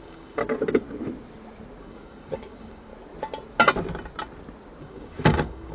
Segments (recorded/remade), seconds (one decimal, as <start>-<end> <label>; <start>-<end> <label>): 0.0-0.4 remade; 0.4-1.8 recorded; 1.8-2.9 remade; 2.9-4.8 recorded; 4.8-5.7 remade